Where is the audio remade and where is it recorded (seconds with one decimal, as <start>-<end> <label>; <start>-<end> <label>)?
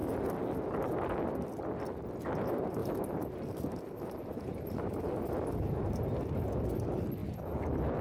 0.0-2.8 recorded; 2.8-5.0 remade; 5.0-8.0 recorded